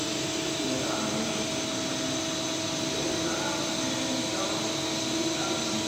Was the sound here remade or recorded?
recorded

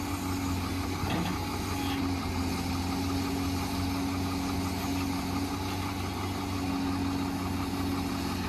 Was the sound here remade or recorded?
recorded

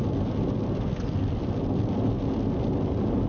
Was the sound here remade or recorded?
recorded